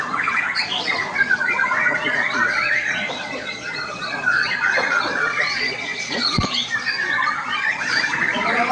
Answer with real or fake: fake